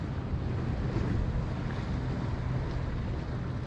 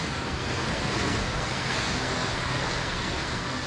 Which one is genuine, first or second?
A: first